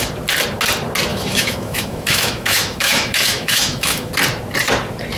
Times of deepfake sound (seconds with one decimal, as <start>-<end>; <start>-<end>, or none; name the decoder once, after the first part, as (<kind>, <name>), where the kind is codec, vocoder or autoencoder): 1.1-4.1 (autoencoder, DAC-VAE)